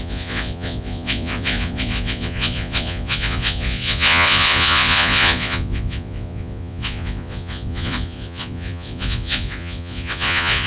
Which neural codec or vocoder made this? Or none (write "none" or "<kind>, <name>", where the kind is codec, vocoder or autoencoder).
vocoder, Vocos